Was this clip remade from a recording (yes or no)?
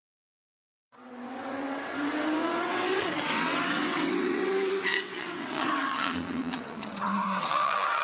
yes